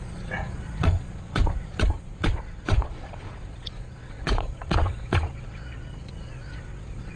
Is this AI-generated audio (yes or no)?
yes